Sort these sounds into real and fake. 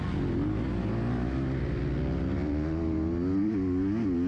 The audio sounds real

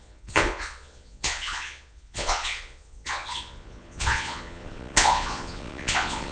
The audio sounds fake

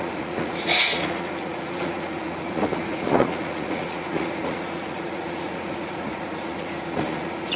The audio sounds fake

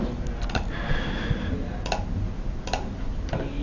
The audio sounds real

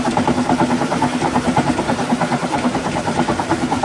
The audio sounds real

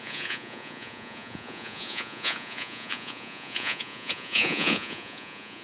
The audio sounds fake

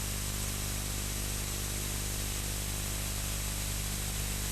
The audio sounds real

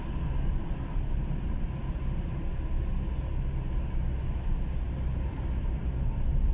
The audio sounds real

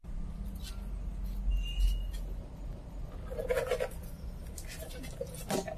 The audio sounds real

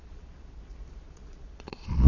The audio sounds fake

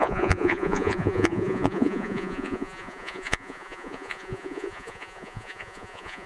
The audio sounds fake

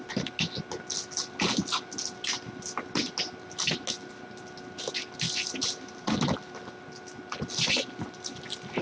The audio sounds real